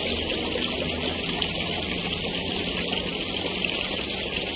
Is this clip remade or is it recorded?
recorded